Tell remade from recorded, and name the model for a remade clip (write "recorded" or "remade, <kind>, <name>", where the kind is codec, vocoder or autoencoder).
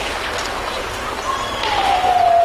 recorded